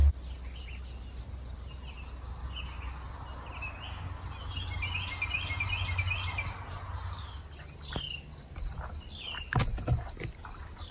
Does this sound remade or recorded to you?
recorded